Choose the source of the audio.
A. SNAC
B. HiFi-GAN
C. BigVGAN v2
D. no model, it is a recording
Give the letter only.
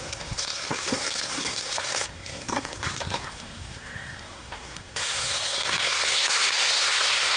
A